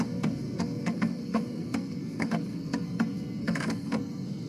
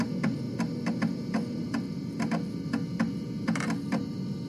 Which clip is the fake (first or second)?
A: first